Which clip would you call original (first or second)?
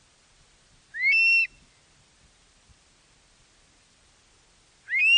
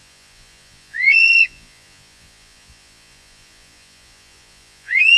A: first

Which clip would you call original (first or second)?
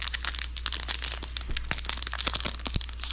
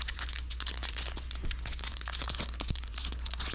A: first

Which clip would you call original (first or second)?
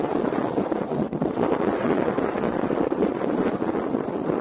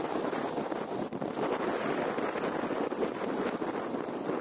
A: second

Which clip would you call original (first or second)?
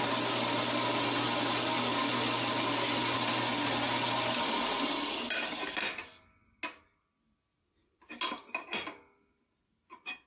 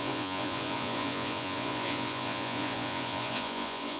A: first